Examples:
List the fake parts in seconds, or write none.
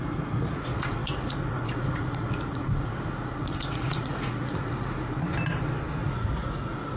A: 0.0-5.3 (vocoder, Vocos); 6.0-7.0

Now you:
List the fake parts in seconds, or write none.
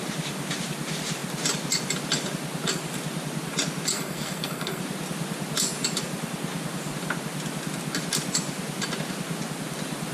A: 3.9-4.8 (codec, SNAC)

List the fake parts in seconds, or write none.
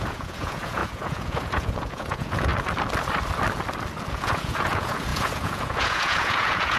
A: 0.0-2.5 (vocoder, Vocos); 4.1-6.8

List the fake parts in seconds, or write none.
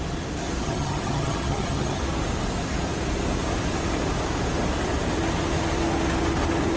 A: 0.6-2.0 (vocoder, HiFi-GAN)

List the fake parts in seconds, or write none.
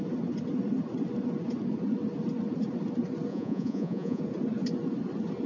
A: 3.3-4.2 (vocoder, Vocos)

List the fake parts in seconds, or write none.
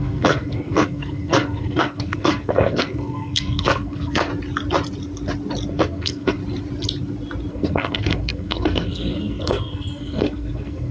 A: 0.0-4.3 (codec, SNAC); 5.7-6.4; 7.5-10.9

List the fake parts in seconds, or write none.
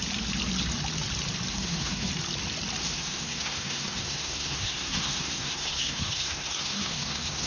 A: 1.5-2.1 (codec, SNAC); 2.8-7.5